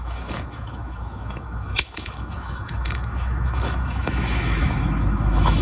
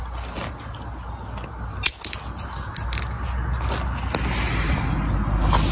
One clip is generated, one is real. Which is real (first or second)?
second